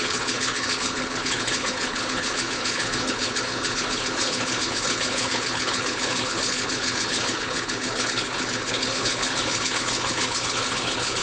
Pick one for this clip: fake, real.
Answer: fake